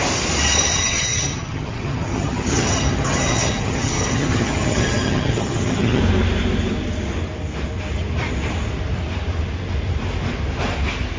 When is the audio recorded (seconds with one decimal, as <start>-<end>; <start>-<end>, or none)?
0.0-0.8; 6.0-11.2